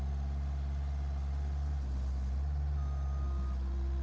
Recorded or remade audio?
recorded